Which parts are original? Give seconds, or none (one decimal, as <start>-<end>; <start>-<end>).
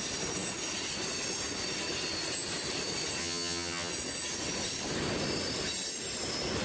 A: 0.0-3.2; 3.9-6.6